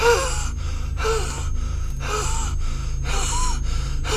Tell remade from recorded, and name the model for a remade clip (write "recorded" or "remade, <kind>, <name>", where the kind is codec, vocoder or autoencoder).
recorded